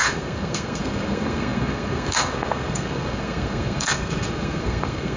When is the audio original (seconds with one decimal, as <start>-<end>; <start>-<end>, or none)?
none